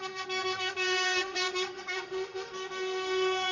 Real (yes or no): no